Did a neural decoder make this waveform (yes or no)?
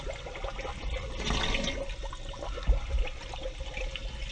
no